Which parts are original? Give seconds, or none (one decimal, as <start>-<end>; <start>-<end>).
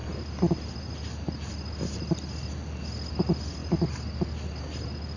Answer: 0.0-5.2